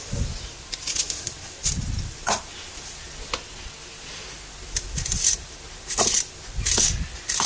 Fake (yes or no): no